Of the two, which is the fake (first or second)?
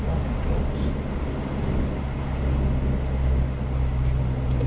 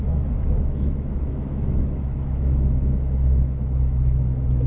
second